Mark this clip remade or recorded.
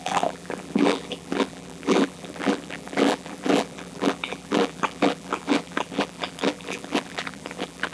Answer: remade